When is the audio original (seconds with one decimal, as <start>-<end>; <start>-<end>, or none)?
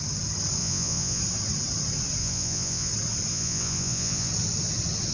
0.0-0.6; 1.2-2.2; 2.9-3.3; 4.3-5.1